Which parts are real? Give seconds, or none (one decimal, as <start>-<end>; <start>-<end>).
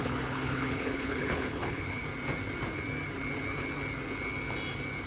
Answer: 2.0-5.1